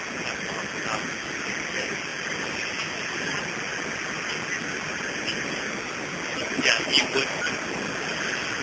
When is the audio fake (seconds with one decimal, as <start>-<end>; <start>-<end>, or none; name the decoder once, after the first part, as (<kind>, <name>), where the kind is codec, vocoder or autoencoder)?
none